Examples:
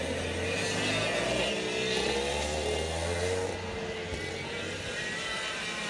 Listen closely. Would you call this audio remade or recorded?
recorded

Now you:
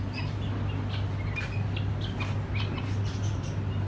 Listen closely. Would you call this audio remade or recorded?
recorded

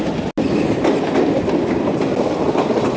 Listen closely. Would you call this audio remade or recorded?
recorded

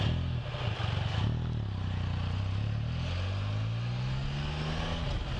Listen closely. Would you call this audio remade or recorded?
recorded